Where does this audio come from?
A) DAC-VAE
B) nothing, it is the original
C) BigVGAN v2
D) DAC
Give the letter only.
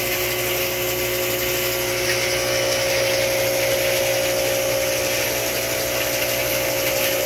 B